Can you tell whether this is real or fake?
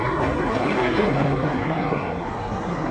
fake